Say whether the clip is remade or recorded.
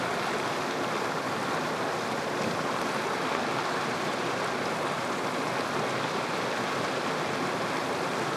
recorded